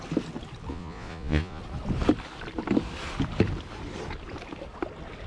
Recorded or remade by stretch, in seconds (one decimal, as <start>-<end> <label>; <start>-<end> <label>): 0.0-0.7 recorded; 0.7-1.6 remade; 1.6-5.3 recorded